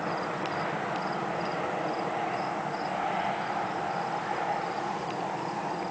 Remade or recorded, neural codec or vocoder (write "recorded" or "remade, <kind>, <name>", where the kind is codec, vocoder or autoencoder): recorded